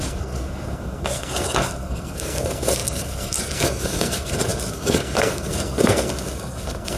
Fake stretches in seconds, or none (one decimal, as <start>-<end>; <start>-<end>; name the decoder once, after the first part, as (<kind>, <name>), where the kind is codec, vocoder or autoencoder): 0.0-7.0 (codec, SNAC)